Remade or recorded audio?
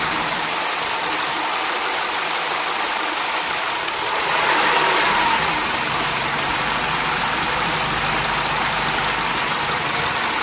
recorded